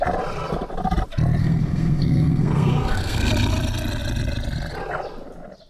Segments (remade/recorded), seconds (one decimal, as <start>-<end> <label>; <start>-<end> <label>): 0.0-1.4 recorded; 1.4-3.3 remade; 3.3-5.7 recorded